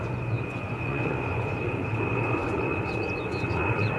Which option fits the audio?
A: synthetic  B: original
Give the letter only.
A